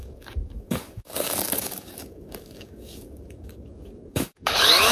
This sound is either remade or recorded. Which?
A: remade